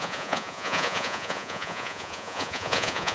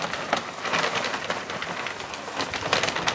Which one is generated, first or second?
first